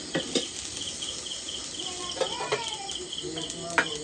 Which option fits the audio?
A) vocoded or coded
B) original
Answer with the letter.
B